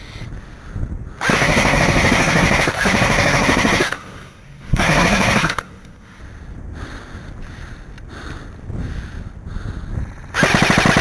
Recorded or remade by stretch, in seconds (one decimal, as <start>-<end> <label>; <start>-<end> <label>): 0.0-1.3 recorded; 1.3-6.2 remade; 6.2-11.0 recorded